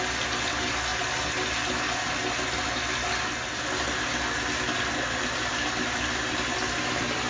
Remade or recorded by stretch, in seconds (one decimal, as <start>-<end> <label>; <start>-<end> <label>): 0.0-7.3 recorded